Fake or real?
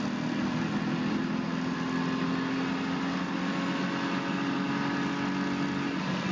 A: real